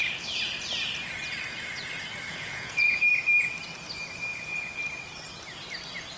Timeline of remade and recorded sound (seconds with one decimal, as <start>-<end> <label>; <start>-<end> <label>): 0.0-2.3 recorded; 2.3-3.0 remade; 3.0-4.3 recorded; 4.3-4.8 remade; 4.8-6.2 recorded